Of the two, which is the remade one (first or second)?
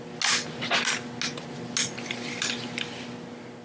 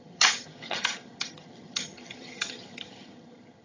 second